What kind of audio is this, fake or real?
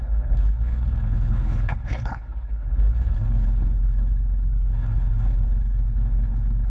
fake